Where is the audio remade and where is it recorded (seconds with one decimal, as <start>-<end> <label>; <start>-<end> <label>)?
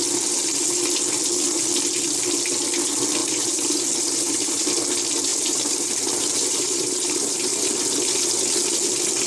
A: 0.0-3.2 recorded; 3.2-4.7 remade; 4.7-5.3 recorded; 5.3-7.6 remade; 7.6-9.3 recorded